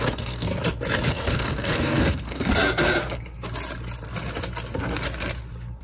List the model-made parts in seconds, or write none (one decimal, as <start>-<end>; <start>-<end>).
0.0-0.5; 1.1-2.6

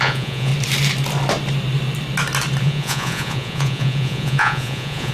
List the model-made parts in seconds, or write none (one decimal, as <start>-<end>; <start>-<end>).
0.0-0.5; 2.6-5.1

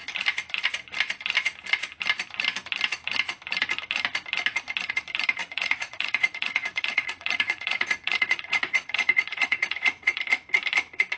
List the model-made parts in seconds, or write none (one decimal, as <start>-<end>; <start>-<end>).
5.4-10.2